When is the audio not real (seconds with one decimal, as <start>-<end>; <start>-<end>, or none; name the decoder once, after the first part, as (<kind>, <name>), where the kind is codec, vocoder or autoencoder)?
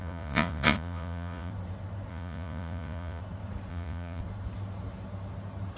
0.0-1.5 (vocoder, Vocos); 2.1-3.2; 3.7-4.2